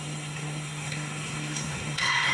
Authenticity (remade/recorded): remade